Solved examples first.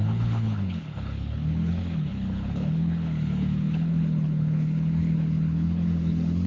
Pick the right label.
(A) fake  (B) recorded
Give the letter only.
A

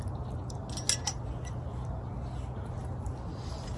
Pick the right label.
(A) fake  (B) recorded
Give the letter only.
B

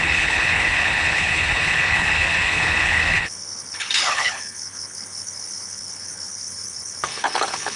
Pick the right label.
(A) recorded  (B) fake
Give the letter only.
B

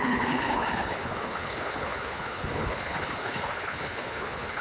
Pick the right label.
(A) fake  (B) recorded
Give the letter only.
A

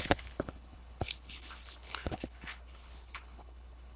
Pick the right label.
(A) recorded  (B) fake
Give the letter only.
B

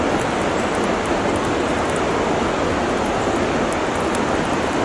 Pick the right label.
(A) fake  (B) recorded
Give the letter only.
B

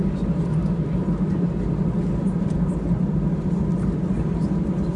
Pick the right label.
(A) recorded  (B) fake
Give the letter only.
A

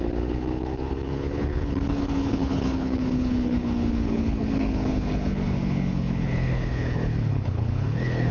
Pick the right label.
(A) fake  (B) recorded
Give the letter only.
A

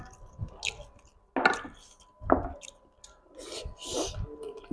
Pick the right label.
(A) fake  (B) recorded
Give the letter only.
B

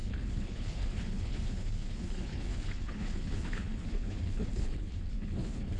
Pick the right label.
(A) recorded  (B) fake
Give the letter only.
B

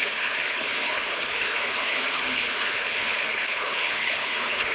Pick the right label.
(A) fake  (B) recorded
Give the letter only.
A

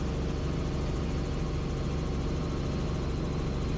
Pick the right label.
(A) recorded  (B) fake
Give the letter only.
A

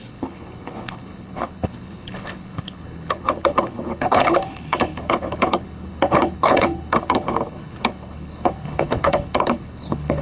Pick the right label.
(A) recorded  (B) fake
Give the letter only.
B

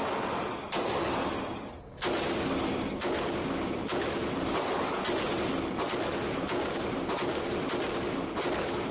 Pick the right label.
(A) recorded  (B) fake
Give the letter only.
A